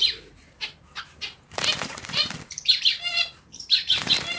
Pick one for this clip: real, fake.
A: fake